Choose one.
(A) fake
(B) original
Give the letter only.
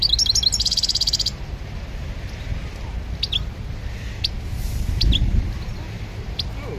B